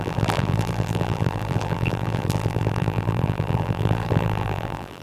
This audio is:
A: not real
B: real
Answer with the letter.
A